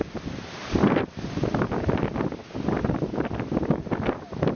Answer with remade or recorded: recorded